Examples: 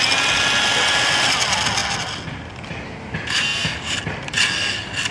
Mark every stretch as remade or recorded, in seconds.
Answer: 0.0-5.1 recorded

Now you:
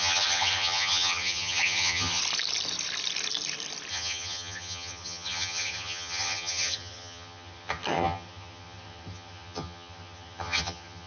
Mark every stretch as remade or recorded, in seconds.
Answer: 0.0-2.2 remade; 2.2-3.9 recorded; 3.9-11.1 remade

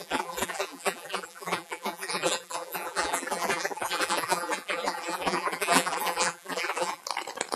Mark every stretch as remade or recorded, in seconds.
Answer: 0.0-7.0 remade; 7.0-7.6 recorded

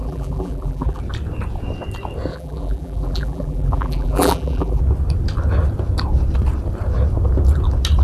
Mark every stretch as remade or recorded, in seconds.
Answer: 0.0-1.0 remade; 1.0-2.3 recorded; 2.3-4.8 remade; 4.8-8.0 recorded

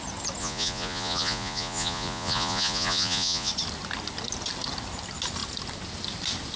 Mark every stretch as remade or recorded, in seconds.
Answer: 0.0-0.4 recorded; 0.4-3.5 remade; 3.5-6.6 recorded

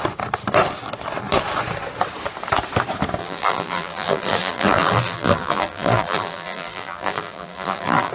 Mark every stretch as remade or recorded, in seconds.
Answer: 0.0-3.2 recorded; 3.2-8.1 remade

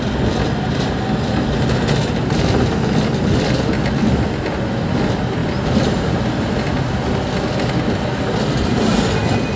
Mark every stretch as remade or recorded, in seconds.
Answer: 0.0-9.6 recorded